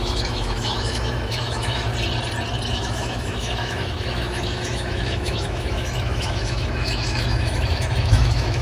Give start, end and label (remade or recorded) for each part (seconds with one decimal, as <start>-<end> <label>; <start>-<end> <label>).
0.0-1.9 remade; 1.9-2.7 recorded; 2.7-8.6 remade